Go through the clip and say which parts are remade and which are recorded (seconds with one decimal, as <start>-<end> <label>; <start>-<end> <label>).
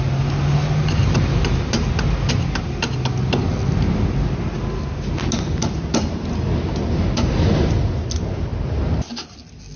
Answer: 0.0-9.8 recorded